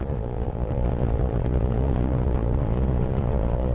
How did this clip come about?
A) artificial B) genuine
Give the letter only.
A